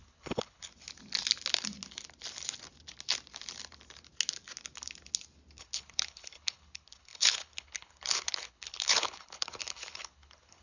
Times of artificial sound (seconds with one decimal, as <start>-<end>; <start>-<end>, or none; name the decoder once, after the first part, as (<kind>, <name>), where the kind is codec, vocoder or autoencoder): 0.0-0.7 (codec, HILCodec); 5.6-10.6